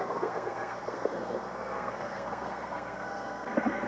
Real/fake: fake